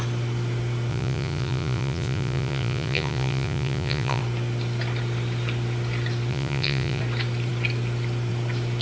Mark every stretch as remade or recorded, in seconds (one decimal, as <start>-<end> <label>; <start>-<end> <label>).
0.0-0.9 recorded; 0.9-4.2 remade; 4.2-6.3 recorded; 6.3-7.0 remade; 7.0-8.8 recorded